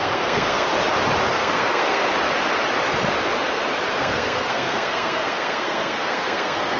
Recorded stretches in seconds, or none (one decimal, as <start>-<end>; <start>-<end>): 0.7-1.3; 2.0-3.9